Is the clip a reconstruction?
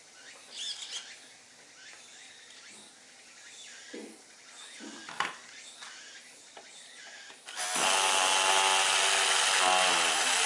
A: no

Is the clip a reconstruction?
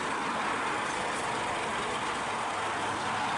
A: no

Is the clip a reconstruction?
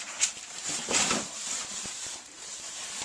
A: yes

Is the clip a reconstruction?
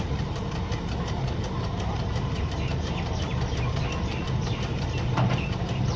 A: yes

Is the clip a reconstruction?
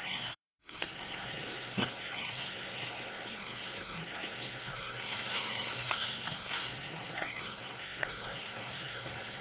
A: yes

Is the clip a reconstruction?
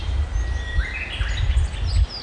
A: no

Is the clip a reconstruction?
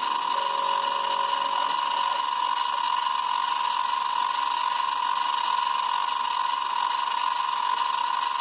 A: no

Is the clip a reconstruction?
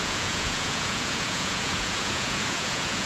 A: yes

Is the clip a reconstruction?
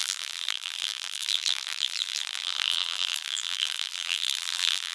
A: yes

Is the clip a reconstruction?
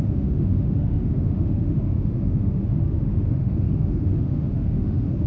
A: yes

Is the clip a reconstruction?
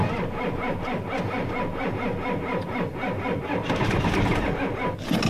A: no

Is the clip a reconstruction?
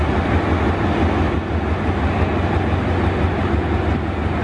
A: no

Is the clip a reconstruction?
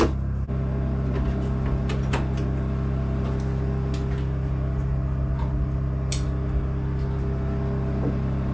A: no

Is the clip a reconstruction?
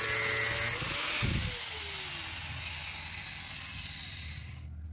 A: no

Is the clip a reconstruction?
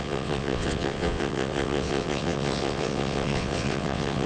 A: yes